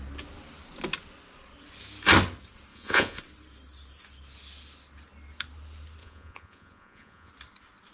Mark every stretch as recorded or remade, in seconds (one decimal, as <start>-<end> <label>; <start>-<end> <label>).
0.0-2.7 recorded; 2.7-3.2 remade; 3.2-6.0 recorded; 6.0-7.3 remade; 7.3-7.9 recorded